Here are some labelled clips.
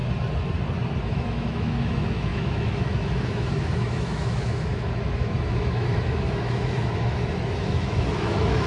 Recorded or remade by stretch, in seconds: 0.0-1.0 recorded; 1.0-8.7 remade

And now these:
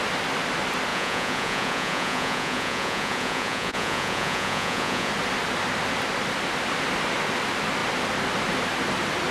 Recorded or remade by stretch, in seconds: 0.0-0.9 recorded; 0.9-5.1 remade; 5.1-9.3 recorded

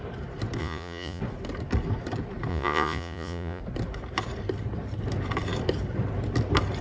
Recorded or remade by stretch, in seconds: 0.0-0.6 recorded; 0.6-1.2 remade; 1.2-2.5 recorded; 2.5-3.6 remade; 3.6-6.8 recorded